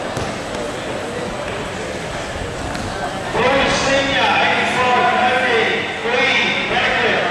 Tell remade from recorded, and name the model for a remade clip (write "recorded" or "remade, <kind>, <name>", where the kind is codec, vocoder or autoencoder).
recorded